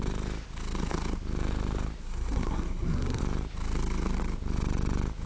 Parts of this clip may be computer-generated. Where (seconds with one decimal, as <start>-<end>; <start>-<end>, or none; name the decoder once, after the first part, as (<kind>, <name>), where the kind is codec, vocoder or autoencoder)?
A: 2.0-3.2 (codec, SNAC)